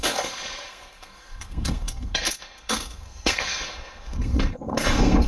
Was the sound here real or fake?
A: fake